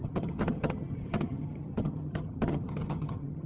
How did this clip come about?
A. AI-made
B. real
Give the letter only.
A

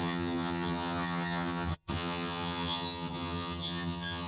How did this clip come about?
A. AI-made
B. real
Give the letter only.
A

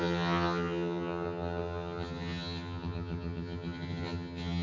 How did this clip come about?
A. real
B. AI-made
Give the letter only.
B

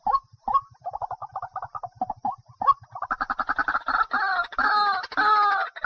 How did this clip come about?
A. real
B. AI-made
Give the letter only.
A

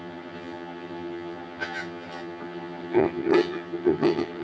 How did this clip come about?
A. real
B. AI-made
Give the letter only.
B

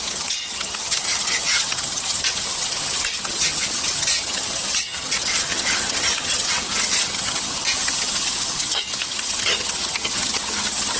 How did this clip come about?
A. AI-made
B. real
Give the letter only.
A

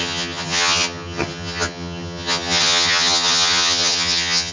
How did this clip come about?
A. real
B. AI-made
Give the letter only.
B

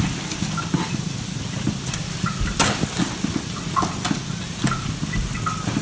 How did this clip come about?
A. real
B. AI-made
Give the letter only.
A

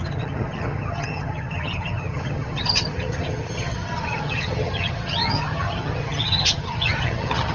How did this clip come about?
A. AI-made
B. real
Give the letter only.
A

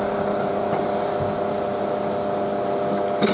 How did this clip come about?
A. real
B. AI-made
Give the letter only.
A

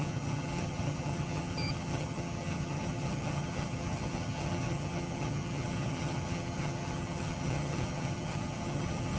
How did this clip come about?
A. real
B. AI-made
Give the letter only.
B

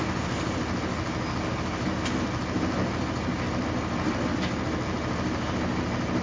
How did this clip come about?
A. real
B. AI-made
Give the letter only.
A